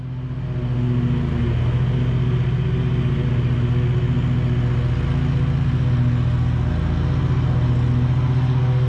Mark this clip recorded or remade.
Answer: recorded